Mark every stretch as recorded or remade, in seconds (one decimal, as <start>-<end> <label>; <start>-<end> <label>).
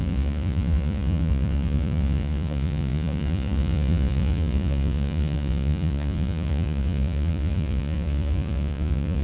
0.0-9.2 remade